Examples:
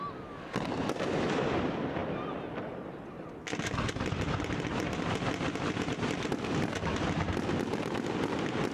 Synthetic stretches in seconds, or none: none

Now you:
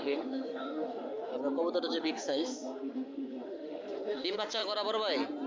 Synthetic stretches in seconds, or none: 0.0-1.3 (autoencoder, DAC-VAE); 2.0-4.6

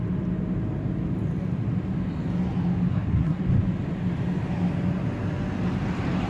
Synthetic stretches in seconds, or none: 2.9-3.4 (codec, SNAC)

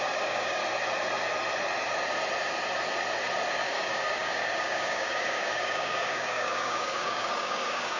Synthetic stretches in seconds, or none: 0.0-0.6 (codec, DAC); 3.5-8.0

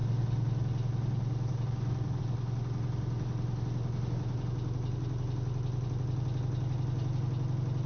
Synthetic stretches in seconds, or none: none